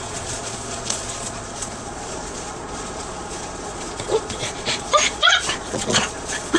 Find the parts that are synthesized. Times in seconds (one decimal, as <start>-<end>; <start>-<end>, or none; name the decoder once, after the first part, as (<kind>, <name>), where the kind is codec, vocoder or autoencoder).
0.0-6.6 (vocoder, Vocos)